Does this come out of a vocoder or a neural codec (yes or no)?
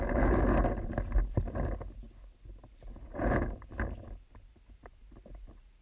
no